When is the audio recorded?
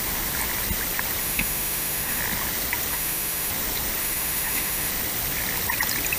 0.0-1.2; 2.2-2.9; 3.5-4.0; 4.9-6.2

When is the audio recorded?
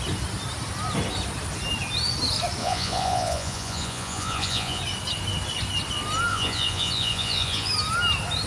0.0-2.6; 4.8-6.3; 7.7-8.5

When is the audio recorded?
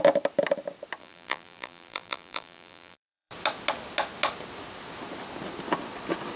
0.0-1.0; 3.3-6.4